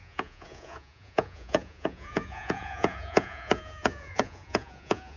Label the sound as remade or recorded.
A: remade